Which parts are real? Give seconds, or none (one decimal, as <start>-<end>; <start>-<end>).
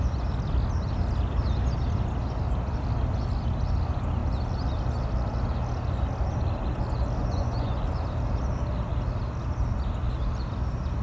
0.0-7.2; 7.8-11.0